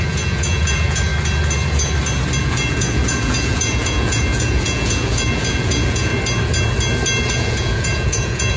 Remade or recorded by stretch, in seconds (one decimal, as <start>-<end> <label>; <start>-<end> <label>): 0.0-1.1 remade; 1.1-2.4 recorded; 2.4-6.1 remade; 6.1-7.3 recorded; 7.3-8.6 remade